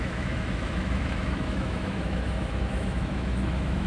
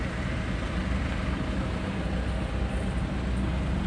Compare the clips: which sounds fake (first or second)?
first